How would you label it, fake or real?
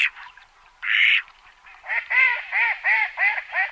fake